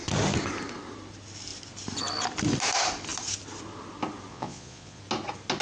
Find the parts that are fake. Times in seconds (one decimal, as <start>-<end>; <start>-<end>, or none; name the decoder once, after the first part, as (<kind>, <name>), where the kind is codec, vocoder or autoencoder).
4.3-5.0 (vocoder, Vocos)